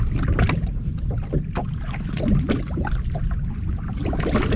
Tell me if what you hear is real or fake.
real